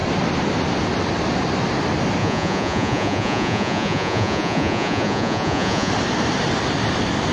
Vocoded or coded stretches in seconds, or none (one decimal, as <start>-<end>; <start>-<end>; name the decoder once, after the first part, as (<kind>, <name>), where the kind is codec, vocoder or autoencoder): 2.2-5.9 (vocoder, Vocos)